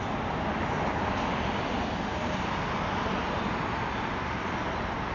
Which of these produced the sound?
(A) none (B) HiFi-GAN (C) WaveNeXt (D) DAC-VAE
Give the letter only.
A